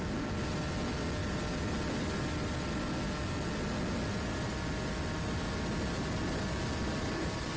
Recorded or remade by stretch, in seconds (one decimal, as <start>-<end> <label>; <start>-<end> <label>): 0.0-7.6 recorded